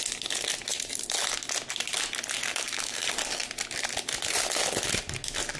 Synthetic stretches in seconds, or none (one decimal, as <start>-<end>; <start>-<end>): 2.5-3.0